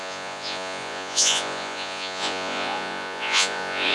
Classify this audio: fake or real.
fake